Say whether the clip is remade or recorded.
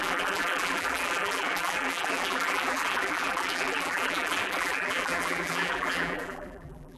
remade